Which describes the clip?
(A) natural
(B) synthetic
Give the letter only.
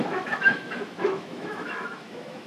B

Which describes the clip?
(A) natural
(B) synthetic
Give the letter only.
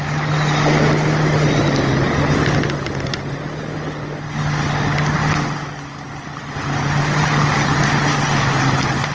A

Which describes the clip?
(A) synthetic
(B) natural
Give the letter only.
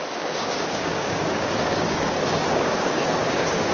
A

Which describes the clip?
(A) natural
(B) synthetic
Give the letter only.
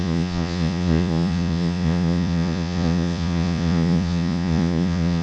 B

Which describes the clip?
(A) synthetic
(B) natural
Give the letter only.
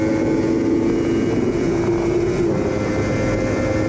B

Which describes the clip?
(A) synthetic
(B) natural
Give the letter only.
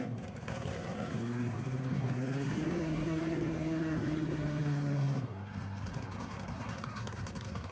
A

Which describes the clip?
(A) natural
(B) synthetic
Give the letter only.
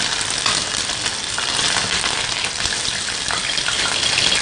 A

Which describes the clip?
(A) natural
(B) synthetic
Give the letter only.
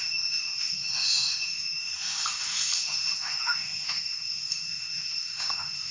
B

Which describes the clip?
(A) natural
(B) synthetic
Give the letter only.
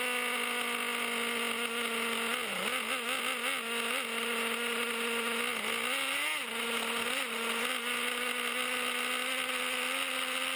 A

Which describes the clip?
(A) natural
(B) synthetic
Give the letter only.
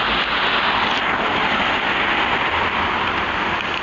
A